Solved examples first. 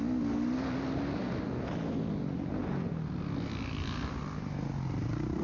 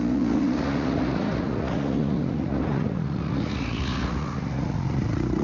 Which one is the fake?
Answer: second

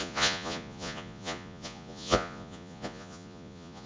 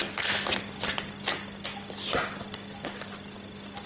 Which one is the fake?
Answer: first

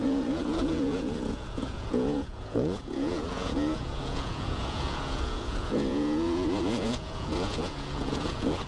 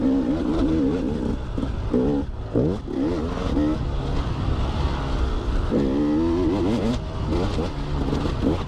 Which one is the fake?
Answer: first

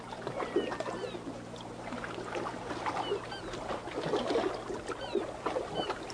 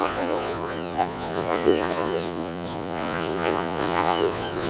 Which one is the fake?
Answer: second